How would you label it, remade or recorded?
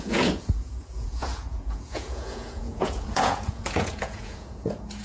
remade